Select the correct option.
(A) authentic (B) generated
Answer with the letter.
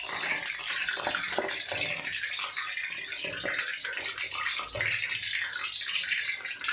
A